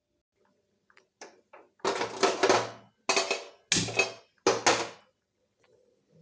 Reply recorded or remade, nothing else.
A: recorded